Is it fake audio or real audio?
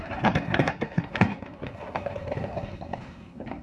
fake